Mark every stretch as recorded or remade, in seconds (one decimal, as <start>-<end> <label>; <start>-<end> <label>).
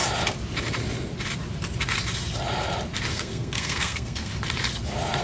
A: 0.0-3.1 recorded; 3.1-4.3 remade; 4.3-5.2 recorded